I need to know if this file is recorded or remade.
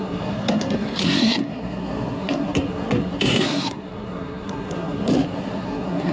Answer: remade